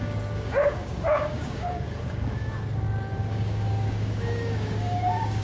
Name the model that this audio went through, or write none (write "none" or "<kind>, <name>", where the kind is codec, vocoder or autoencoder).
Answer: codec, DAC